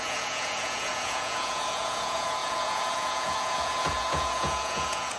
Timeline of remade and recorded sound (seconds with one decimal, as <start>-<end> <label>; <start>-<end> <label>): 0.0-5.2 remade